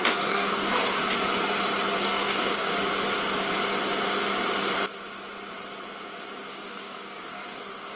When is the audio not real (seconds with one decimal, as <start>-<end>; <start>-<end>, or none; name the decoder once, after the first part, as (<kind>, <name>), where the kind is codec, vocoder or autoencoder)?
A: 0.0-1.0 (codec, DAC); 2.0-2.7; 6.5-8.0